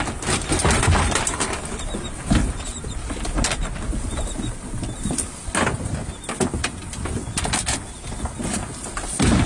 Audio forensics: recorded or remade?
recorded